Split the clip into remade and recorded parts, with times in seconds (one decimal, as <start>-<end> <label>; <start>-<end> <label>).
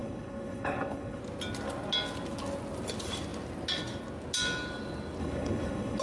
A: 0.0-1.2 remade; 1.2-5.2 recorded; 5.2-6.0 remade